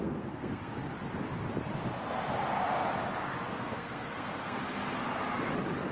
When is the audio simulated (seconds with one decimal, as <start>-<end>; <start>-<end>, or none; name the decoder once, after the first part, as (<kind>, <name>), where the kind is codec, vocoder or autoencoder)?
0.0-0.7 (codec, SNAC); 3.5-4.6